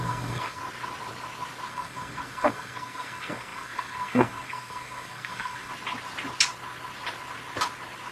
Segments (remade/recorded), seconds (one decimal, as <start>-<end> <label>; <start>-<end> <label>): 0.0-0.6 remade; 0.6-1.7 recorded; 1.7-5.7 remade; 5.7-8.1 recorded